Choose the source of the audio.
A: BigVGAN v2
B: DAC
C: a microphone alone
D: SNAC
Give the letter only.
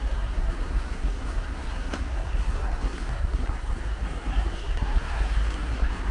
D